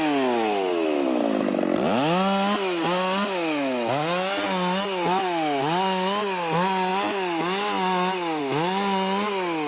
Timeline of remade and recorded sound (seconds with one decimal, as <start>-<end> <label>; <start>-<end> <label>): 0.0-9.7 recorded